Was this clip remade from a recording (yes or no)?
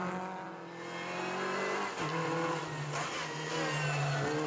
no